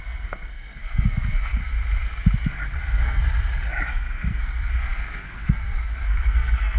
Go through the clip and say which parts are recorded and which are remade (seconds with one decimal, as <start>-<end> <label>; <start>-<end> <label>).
0.0-1.7 remade; 1.7-2.8 recorded; 2.8-3.2 remade; 3.2-3.9 recorded; 3.9-6.8 remade